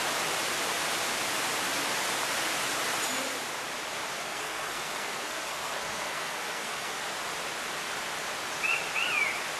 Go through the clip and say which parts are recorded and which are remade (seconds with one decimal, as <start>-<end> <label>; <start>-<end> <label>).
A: 0.0-4.2 recorded; 4.2-7.0 remade; 7.0-9.6 recorded

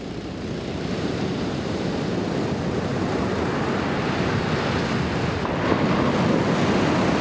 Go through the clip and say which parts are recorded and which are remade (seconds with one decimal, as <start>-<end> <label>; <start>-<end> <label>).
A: 0.0-7.2 recorded

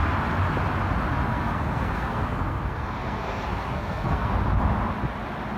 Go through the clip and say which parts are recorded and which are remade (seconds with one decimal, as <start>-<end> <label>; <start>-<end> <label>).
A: 0.0-1.3 recorded; 1.3-4.3 remade; 4.3-5.6 recorded

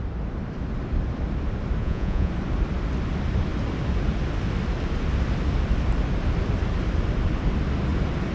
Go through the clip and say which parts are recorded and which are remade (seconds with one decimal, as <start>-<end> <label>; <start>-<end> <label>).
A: 0.0-1.8 recorded; 1.8-2.3 remade; 2.3-8.3 recorded